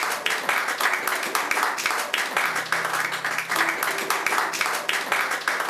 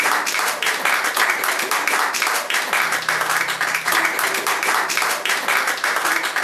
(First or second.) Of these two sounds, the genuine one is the first